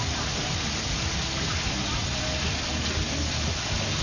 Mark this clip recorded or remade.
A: recorded